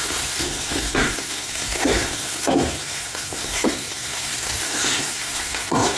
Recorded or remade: remade